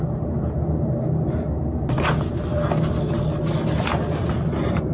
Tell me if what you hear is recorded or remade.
recorded